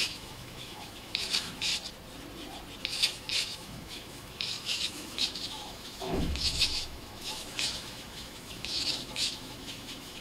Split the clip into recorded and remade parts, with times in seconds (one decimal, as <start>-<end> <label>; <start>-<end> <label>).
0.0-1.7 remade; 1.7-2.8 recorded; 2.8-10.2 remade